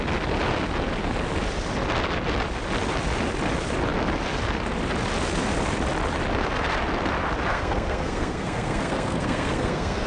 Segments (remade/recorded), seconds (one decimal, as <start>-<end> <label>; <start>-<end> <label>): 0.0-7.5 recorded; 7.5-10.1 remade